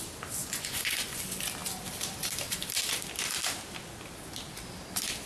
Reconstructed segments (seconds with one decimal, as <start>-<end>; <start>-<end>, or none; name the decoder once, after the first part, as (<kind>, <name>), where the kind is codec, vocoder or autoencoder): 0.4-1.2 (vocoder, Vocos)